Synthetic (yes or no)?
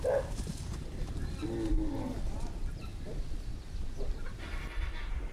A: no